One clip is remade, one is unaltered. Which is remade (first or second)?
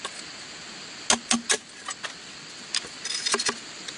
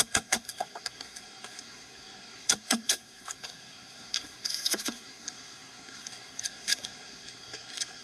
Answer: second